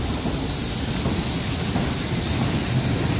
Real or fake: real